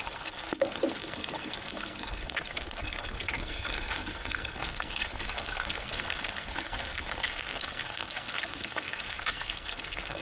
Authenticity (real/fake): fake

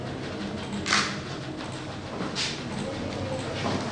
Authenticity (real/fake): real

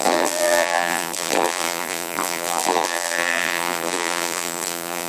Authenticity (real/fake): fake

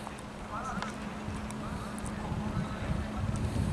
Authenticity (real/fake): real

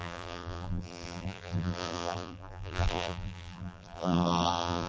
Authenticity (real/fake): fake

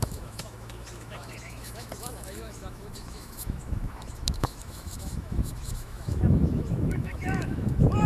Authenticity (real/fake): fake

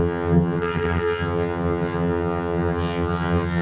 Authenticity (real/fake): fake